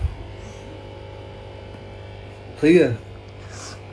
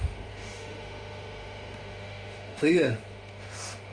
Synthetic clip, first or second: second